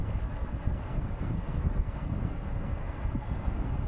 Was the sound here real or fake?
fake